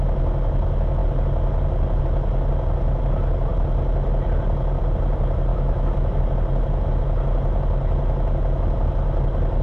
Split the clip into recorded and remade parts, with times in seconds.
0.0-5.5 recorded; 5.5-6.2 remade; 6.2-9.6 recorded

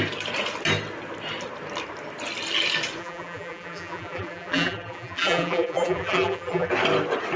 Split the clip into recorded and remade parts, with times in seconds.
0.0-3.0 recorded; 3.0-6.7 remade; 6.7-7.4 recorded

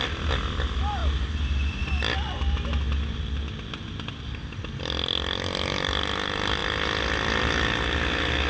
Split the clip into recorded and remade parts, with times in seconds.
0.0-8.5 recorded

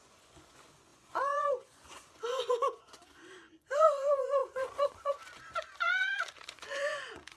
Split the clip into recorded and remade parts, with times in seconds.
0.0-7.4 remade

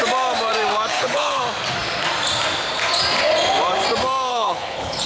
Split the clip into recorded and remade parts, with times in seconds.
0.0-0.9 recorded; 0.9-1.4 remade; 1.4-4.3 recorded; 4.3-5.1 remade

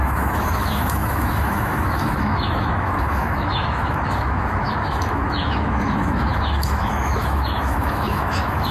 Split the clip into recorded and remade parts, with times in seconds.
0.0-8.7 remade

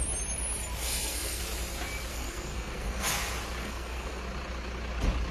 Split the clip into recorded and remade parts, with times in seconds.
0.0-0.8 recorded; 0.8-1.4 remade; 1.4-2.1 recorded; 2.1-3.1 remade; 3.1-3.6 recorded; 3.6-4.2 remade; 4.2-5.3 recorded

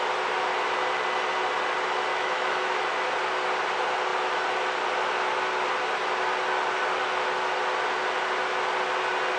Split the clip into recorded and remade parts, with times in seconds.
0.0-2.1 recorded; 2.1-2.8 remade; 2.8-9.4 recorded